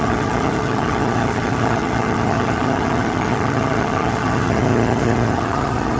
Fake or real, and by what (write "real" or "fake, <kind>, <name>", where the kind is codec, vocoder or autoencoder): fake, vocoder, HiFi-GAN